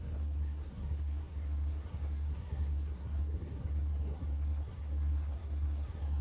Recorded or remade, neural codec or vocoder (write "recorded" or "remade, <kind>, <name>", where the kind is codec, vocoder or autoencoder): remade, codec, SNAC